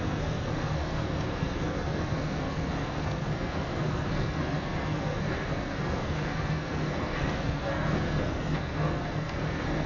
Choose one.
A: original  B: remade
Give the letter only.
B